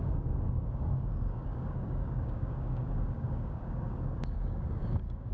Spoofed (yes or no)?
yes